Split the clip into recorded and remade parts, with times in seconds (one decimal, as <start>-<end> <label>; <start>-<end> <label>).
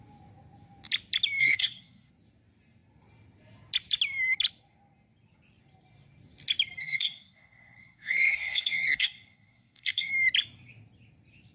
0.0-1.4 recorded; 1.4-2.1 remade; 2.1-6.8 recorded; 6.8-10.1 remade; 10.1-11.5 recorded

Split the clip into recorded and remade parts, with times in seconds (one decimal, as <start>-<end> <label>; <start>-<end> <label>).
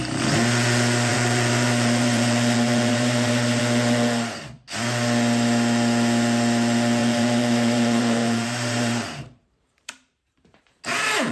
0.0-1.1 recorded; 1.1-3.6 remade; 3.6-7.0 recorded; 7.0-10.6 remade; 10.6-11.3 recorded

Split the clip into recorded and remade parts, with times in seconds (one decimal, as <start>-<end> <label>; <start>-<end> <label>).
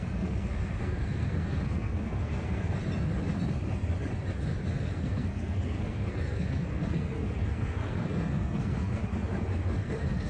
0.0-2.8 remade; 2.8-4.7 recorded; 4.7-9.0 remade; 9.0-9.7 recorded; 9.7-10.3 remade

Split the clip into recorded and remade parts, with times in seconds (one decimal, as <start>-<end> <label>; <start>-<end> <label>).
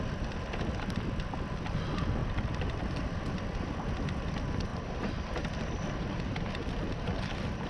0.0-2.2 recorded; 2.2-3.1 remade; 3.1-4.7 recorded; 4.7-7.7 remade